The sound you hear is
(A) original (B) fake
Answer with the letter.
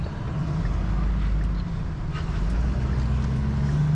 A